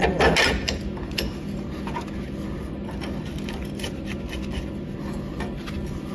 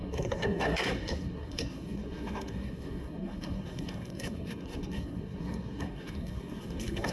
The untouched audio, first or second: first